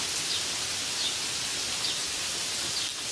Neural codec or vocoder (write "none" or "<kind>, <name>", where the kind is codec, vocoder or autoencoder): none